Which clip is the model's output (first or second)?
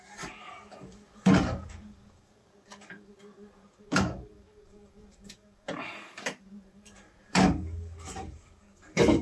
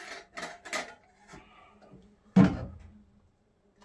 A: first